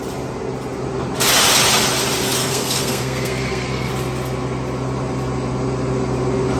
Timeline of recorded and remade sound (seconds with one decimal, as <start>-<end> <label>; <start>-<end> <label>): 0.0-2.4 recorded; 2.4-3.9 remade; 3.9-6.6 recorded